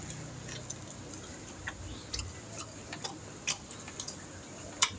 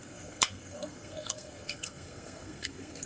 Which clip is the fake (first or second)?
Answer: second